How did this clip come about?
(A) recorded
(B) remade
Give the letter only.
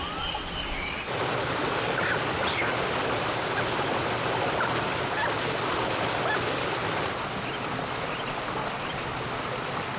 A